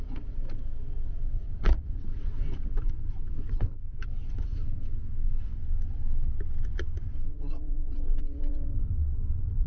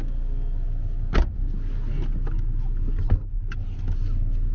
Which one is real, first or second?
second